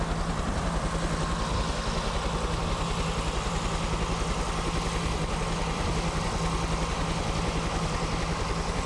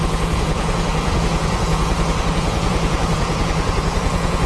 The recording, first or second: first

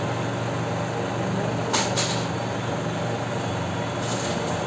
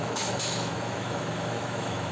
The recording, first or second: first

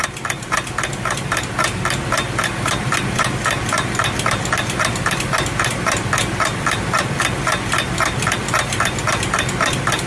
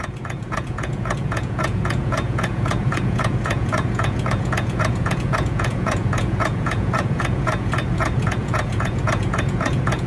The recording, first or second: first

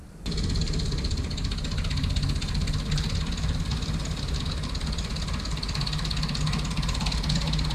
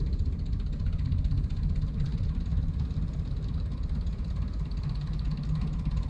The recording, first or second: first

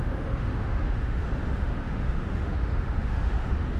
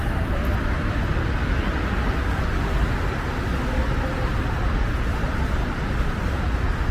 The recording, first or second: second